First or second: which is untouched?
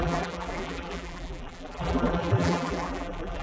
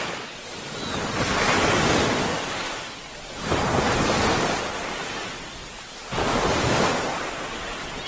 second